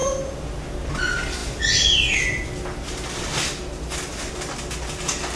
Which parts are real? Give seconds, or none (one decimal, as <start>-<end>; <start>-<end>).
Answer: 0.0-5.4